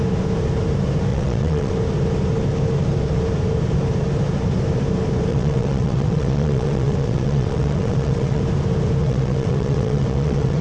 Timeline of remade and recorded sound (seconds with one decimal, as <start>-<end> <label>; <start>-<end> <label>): 0.0-1.1 recorded; 1.1-1.7 remade; 1.7-5.3 recorded; 5.3-8.4 remade; 8.4-9.0 recorded; 9.0-10.6 remade